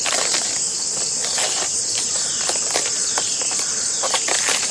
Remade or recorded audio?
recorded